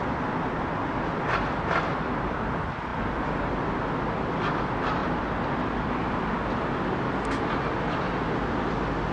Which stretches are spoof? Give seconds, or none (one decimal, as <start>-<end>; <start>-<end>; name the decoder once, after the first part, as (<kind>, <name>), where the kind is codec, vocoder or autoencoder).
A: 5.0-6.3 (vocoder, BigVGAN v2)